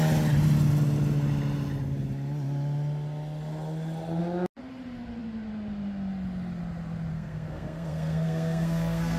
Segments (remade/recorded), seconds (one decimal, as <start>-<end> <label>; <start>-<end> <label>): 0.0-7.1 recorded; 7.1-9.2 remade